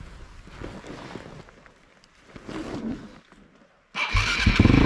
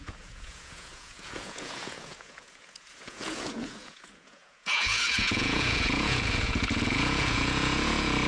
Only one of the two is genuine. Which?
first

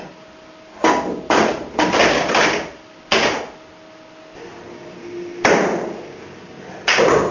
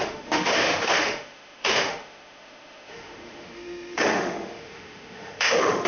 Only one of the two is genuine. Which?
first